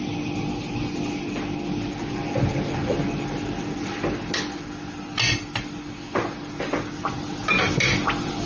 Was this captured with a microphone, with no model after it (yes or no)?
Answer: yes